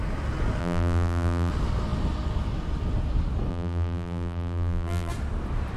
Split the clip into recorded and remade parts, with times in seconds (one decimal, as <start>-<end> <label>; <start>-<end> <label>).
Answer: 0.0-0.6 recorded; 0.6-1.5 remade; 1.5-3.5 recorded; 3.5-5.1 remade; 5.1-5.8 recorded

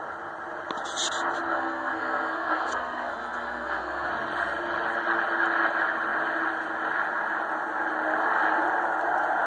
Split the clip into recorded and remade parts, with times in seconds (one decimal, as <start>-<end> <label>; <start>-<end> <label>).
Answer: 0.0-1.5 recorded; 1.5-4.1 remade; 4.1-9.5 recorded

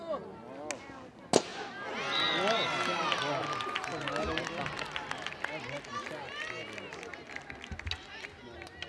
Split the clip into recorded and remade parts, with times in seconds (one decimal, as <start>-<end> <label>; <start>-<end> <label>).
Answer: 0.0-8.9 recorded

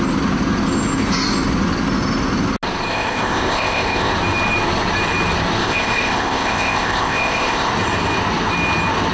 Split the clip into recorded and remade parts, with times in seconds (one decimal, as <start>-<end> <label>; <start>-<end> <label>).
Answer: 0.0-2.9 recorded; 2.9-4.1 remade; 4.1-5.6 recorded; 5.6-7.7 remade; 7.7-9.1 recorded

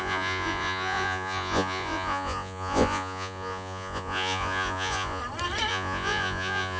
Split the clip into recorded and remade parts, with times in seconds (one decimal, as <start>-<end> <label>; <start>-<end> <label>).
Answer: 0.0-5.2 remade; 5.2-5.7 recorded; 5.7-6.8 remade

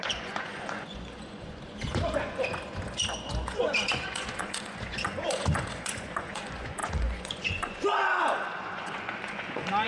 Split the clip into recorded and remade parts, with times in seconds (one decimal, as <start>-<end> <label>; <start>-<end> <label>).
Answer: 0.0-9.9 remade